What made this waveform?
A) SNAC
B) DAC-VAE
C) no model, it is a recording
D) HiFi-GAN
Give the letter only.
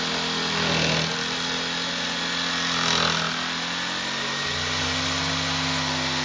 C